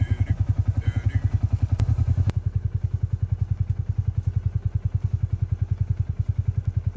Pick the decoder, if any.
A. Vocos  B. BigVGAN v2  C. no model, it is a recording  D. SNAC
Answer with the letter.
B